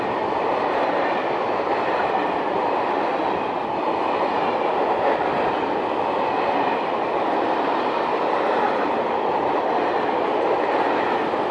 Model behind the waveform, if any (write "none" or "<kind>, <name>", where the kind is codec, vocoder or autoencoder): none